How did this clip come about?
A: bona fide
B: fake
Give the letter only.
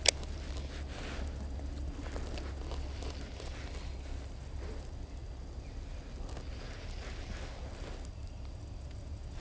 A